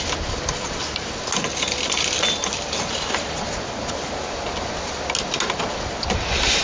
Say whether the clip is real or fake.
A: real